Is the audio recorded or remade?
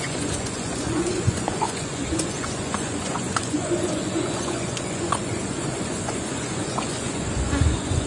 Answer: remade